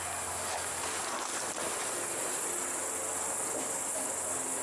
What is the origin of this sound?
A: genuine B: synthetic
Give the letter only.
A